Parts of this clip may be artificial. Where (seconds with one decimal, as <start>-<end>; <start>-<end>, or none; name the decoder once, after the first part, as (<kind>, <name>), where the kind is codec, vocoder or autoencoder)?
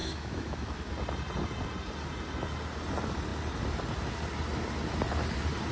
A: 0.0-0.9 (autoencoder, DAC-VAE)